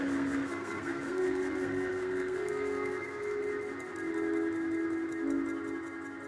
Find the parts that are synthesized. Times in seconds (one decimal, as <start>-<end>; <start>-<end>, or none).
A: 0.0-3.4